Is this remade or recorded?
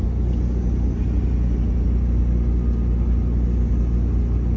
recorded